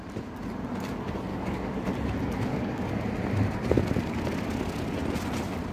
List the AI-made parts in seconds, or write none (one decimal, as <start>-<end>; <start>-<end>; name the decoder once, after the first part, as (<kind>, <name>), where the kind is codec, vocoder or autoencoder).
1.3-1.9 (codec, DAC); 2.5-3.0